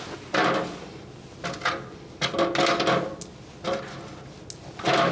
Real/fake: real